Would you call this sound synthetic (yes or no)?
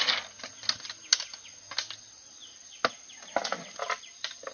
no